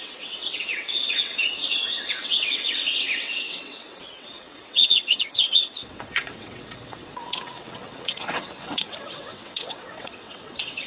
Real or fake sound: fake